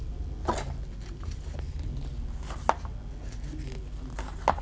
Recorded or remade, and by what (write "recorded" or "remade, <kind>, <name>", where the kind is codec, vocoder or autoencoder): recorded